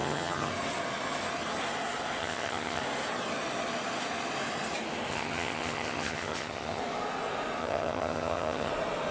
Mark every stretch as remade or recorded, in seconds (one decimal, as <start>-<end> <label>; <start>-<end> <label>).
0.0-0.5 remade; 0.5-2.2 recorded; 2.2-2.8 remade; 2.8-5.1 recorded; 5.1-6.8 remade; 6.8-7.6 recorded; 7.6-8.7 remade; 8.7-9.1 recorded